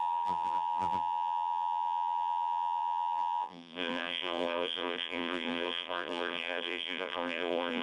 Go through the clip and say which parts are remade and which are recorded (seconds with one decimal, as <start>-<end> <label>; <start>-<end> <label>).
0.0-7.8 remade